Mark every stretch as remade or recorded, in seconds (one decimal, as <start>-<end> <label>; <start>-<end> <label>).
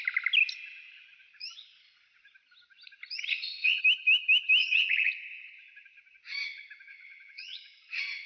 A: 0.0-3.3 recorded; 3.3-3.8 remade; 3.8-4.6 recorded; 4.6-5.1 remade; 5.1-6.9 recorded; 6.9-8.3 remade